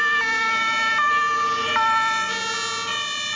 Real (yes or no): yes